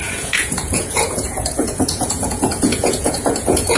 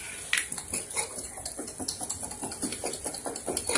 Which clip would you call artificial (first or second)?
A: first